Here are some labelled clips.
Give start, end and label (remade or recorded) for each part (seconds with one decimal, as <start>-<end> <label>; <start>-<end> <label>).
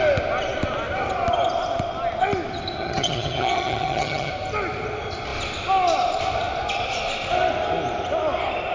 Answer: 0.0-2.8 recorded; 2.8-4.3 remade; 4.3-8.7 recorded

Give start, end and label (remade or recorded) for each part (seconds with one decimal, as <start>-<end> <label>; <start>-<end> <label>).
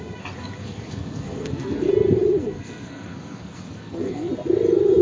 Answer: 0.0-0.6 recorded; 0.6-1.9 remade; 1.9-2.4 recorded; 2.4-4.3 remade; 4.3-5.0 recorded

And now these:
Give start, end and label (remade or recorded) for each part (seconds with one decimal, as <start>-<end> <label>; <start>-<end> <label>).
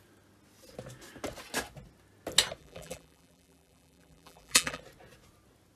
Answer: 0.0-2.6 recorded; 2.6-4.8 remade; 4.8-5.8 recorded